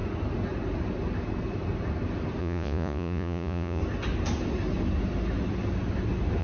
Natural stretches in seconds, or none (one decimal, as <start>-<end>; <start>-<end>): 0.0-2.4; 3.8-6.4